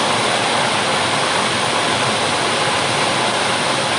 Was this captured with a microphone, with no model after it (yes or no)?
yes